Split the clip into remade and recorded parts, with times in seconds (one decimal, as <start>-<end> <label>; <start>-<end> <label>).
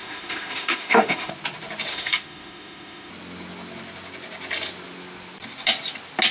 0.0-1.3 remade; 1.3-1.9 recorded; 1.9-3.1 remade; 3.1-6.3 recorded